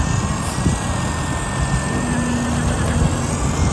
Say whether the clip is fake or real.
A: real